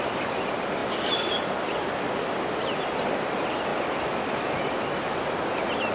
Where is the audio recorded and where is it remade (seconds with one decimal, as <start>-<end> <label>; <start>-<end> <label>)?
0.0-5.9 recorded